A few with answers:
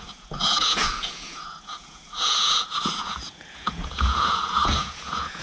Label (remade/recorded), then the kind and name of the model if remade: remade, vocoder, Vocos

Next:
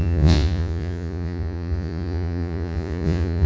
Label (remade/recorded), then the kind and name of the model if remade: remade, vocoder, Vocos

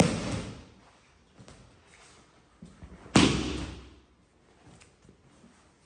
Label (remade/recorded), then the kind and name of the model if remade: recorded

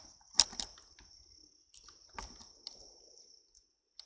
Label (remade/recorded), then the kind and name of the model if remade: recorded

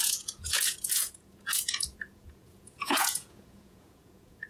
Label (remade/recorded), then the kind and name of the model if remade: remade, vocoder, Vocos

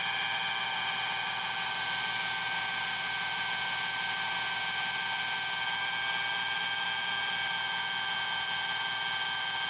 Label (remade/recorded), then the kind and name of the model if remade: recorded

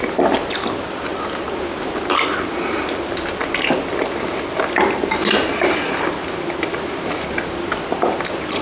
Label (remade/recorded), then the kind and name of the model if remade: recorded